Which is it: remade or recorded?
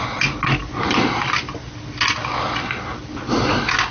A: recorded